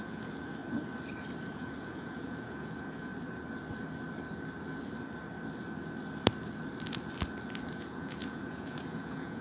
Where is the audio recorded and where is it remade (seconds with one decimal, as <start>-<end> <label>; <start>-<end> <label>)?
0.0-0.6 remade; 0.6-1.5 recorded; 1.5-3.1 remade; 3.1-7.7 recorded; 7.7-9.4 remade

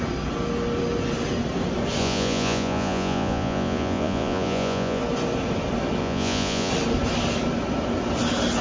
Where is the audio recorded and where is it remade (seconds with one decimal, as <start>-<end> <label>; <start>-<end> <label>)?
0.0-2.0 recorded; 2.0-5.0 remade; 5.0-6.0 recorded; 6.0-6.7 remade; 6.7-8.6 recorded

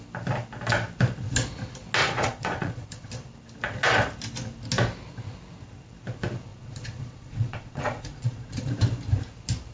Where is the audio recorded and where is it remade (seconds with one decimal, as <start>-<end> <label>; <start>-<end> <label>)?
0.0-2.0 recorded; 2.0-3.1 remade; 3.1-6.5 recorded; 6.5-8.7 remade; 8.7-9.7 recorded

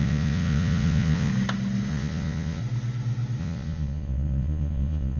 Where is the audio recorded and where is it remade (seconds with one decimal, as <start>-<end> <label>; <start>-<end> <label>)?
0.0-1.3 remade; 1.3-1.9 recorded; 1.9-2.6 remade; 2.6-3.4 recorded; 3.4-5.2 remade